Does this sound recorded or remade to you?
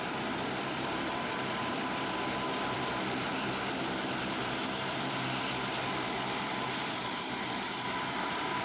remade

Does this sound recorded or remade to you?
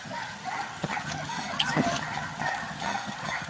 remade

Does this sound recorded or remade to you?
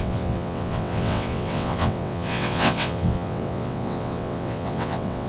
remade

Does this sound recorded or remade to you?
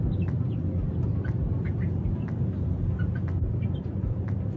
recorded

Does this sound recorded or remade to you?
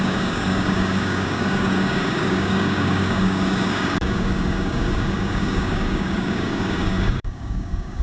remade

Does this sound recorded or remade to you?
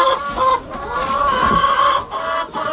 recorded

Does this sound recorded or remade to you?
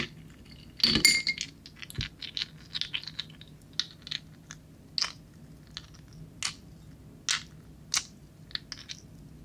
recorded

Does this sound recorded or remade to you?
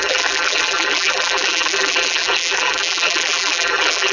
remade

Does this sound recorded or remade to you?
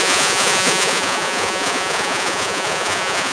remade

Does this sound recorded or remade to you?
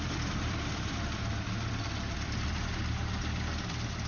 remade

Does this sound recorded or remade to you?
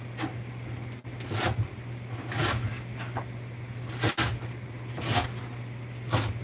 recorded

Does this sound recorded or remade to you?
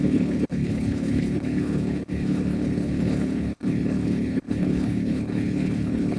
remade